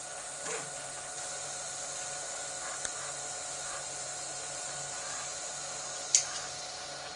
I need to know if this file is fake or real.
real